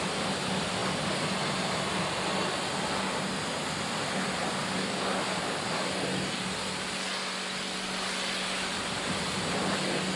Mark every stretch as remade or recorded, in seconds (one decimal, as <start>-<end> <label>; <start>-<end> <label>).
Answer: 0.0-10.2 recorded